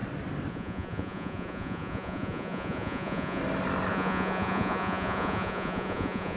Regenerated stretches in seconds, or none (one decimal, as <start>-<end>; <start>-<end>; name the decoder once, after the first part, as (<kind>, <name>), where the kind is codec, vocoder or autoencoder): 0.5-3.4 (vocoder, Vocos); 3.9-6.4